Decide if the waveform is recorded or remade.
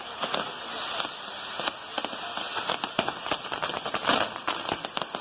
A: recorded